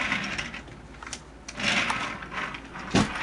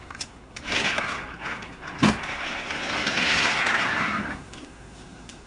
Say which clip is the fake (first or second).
second